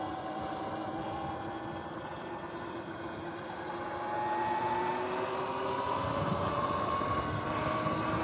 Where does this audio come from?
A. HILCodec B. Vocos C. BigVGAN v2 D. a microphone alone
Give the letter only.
D